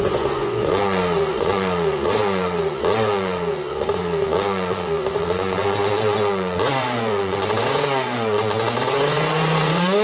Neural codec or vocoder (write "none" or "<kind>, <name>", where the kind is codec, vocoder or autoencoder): vocoder, Vocos